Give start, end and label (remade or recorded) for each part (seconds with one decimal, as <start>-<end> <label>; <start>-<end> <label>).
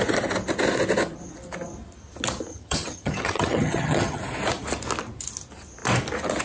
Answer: 0.0-2.5 recorded; 2.5-4.2 remade; 4.2-6.4 recorded